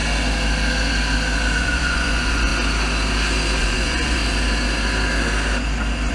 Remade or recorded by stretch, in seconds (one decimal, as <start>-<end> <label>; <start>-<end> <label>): 0.0-1.6 recorded; 1.6-2.5 remade; 2.5-3.6 recorded; 3.6-4.2 remade; 4.2-6.1 recorded